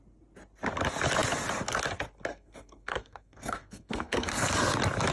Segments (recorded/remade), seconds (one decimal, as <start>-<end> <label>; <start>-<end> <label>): 0.0-2.3 recorded; 2.3-4.5 remade; 4.5-5.1 recorded